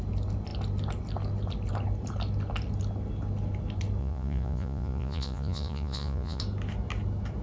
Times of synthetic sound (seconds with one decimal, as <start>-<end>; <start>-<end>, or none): 4.0-6.4